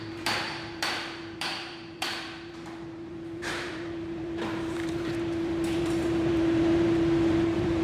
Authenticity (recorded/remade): remade